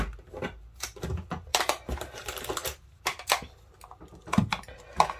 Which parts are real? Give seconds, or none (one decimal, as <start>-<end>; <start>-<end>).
0.0-1.5; 3.0-5.2